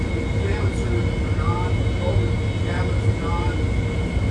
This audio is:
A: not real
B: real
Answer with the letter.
B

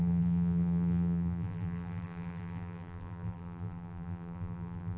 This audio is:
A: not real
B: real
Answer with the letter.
A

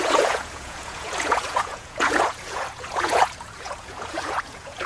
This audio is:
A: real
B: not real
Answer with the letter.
B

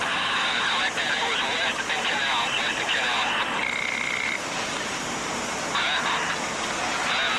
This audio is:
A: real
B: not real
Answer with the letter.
A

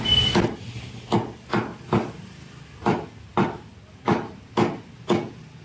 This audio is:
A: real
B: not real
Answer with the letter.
A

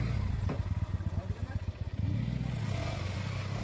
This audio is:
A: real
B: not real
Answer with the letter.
A